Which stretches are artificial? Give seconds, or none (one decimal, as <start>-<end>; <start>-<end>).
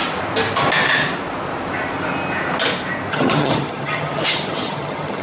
3.1-5.2